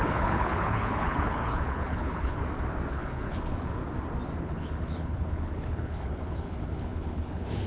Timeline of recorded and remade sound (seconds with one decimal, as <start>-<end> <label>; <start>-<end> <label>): 0.0-2.4 remade; 2.4-2.9 recorded; 2.9-3.8 remade; 3.8-4.4 recorded; 4.4-7.7 remade